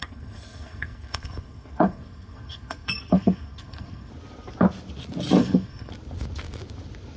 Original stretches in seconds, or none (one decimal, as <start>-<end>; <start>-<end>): 4.1-5.4; 5.9-7.2